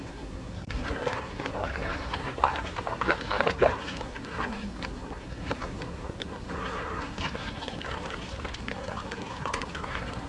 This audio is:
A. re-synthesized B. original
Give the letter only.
A